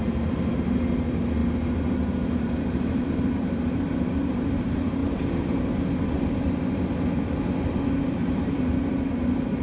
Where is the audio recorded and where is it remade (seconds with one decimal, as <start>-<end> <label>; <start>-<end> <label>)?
0.0-5.0 remade; 5.0-8.1 recorded; 8.1-9.6 remade